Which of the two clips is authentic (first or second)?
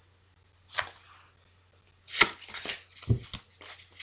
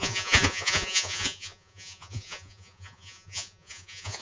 first